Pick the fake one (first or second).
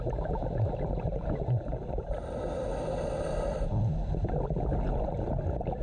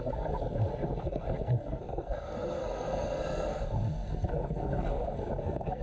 second